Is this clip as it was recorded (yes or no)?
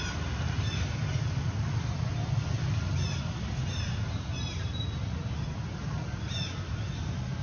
yes